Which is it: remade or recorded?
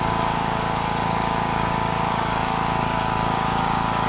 remade